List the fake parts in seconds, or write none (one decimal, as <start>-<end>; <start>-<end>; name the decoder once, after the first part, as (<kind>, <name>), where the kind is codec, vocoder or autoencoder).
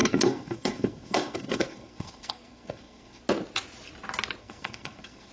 0.0-3.2 (codec, SNAC); 4.4-5.3